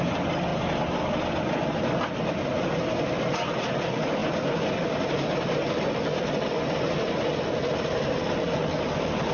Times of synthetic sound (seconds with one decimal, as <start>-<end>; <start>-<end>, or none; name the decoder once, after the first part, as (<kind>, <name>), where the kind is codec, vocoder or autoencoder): none